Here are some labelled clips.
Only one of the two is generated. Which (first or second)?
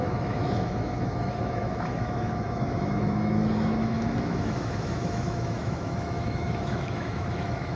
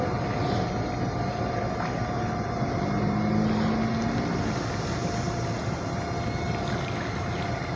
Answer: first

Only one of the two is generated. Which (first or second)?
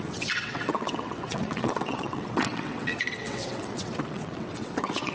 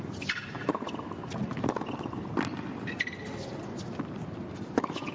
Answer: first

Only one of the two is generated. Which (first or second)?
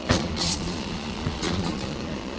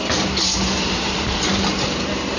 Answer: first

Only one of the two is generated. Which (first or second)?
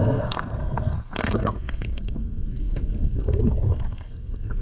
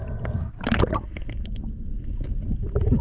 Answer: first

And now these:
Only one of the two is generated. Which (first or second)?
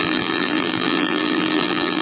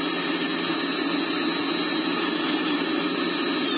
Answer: first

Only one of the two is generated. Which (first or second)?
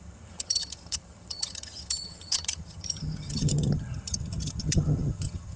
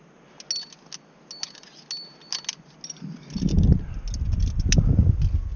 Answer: first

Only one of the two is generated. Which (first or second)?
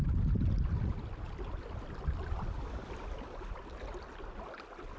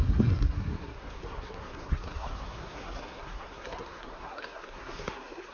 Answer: second